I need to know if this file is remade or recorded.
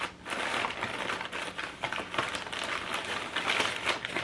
recorded